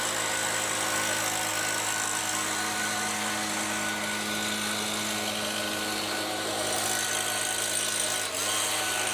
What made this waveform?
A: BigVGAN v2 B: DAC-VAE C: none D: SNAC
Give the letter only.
C